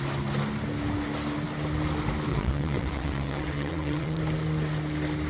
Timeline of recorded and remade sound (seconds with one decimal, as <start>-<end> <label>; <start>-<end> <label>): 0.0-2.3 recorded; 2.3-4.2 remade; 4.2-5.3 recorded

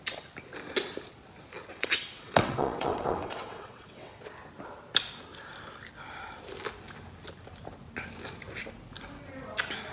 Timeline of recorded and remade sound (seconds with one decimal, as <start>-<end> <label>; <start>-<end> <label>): 0.0-1.7 recorded; 1.7-4.2 remade; 4.2-9.9 recorded

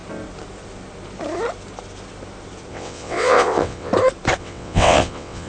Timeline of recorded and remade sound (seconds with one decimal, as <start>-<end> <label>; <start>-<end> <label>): 0.0-2.7 recorded; 2.7-3.9 remade; 3.9-4.4 recorded; 4.4-5.5 remade